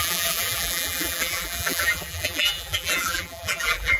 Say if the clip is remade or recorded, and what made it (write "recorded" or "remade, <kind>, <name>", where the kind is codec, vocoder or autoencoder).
remade, vocoder, BigVGAN v2